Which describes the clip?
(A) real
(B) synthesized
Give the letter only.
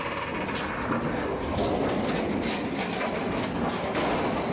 A